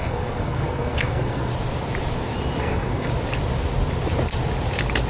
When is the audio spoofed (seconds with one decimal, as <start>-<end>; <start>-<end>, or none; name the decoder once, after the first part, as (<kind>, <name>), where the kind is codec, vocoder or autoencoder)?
0.0-1.5 (codec, SNAC); 2.6-3.1